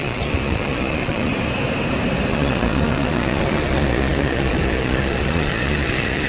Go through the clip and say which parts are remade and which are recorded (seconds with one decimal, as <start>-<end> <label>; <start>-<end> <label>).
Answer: 0.0-1.3 remade; 1.3-2.3 recorded; 2.3-6.3 remade

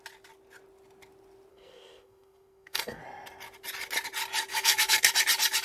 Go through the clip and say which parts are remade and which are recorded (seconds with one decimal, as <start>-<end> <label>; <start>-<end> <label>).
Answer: 0.0-1.5 recorded; 1.5-3.0 remade; 3.0-4.5 recorded; 4.5-5.1 remade; 5.1-5.6 recorded

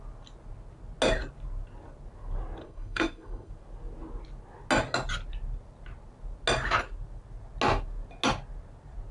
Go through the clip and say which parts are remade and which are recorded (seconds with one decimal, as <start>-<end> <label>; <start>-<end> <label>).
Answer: 0.0-2.6 recorded; 2.6-3.5 remade; 3.5-9.1 recorded

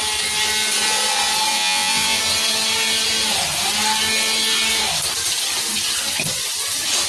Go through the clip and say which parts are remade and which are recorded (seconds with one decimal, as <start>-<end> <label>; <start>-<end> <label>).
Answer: 0.0-1.5 recorded; 1.5-2.2 remade; 2.2-7.1 recorded

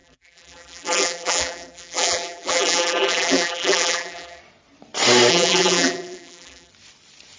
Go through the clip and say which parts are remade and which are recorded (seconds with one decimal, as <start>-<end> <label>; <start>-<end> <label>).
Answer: 0.0-4.4 remade; 4.4-5.3 recorded; 5.3-6.7 remade; 6.7-7.4 recorded

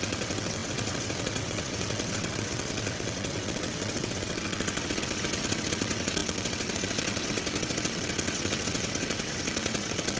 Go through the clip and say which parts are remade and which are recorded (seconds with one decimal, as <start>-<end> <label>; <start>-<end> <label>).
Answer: 0.0-10.2 remade